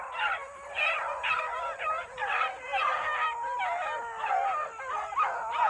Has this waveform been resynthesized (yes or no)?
no